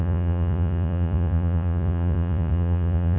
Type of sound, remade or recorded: remade